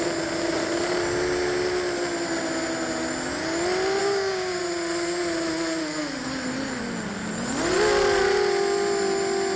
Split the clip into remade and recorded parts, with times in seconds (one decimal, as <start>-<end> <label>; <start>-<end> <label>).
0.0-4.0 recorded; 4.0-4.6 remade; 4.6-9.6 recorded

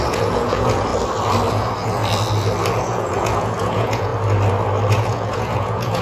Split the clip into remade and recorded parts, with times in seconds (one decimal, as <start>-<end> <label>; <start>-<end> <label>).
0.0-0.9 remade; 0.9-1.5 recorded; 1.5-2.0 remade; 2.0-2.8 recorded; 2.8-4.1 remade; 4.1-4.9 recorded; 4.9-6.0 remade

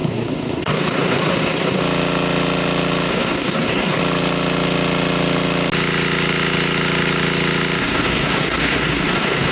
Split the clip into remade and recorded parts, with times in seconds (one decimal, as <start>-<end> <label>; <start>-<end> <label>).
0.0-1.8 remade; 1.8-3.1 recorded; 3.1-4.0 remade; 4.0-7.8 recorded; 7.8-9.5 remade